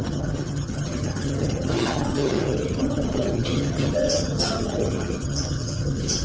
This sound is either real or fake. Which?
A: fake